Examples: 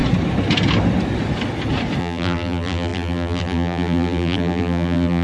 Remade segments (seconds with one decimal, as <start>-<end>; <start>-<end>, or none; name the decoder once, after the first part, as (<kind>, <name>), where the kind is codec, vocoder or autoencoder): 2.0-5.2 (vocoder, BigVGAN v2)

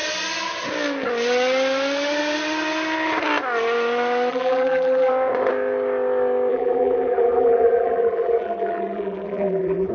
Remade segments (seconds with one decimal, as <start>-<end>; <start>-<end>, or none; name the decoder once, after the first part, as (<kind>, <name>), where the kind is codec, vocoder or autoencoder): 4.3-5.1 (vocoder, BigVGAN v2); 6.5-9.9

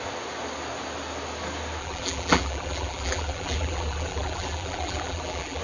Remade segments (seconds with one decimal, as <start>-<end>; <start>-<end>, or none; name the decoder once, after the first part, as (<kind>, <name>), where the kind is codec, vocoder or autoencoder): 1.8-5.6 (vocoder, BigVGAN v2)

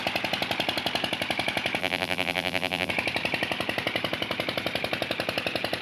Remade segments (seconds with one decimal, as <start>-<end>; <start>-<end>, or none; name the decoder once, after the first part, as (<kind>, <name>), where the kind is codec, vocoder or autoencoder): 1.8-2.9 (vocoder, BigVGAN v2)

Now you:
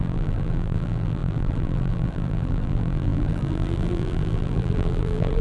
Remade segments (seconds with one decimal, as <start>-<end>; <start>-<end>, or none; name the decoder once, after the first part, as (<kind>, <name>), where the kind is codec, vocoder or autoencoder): 0.0-5.4 (vocoder, BigVGAN v2)